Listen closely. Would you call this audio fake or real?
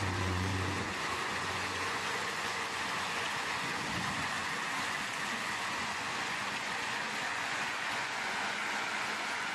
fake